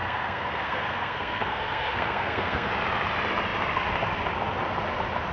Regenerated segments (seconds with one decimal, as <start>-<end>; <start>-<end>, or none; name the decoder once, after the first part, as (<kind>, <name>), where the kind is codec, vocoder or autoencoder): 0.0-2.7 (codec, SNAC)